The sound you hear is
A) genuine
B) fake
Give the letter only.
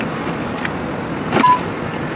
A